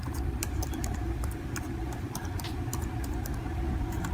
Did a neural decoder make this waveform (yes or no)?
yes